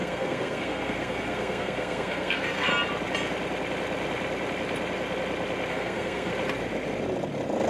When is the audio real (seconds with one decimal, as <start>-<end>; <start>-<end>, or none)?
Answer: 2.7-5.7; 6.3-7.7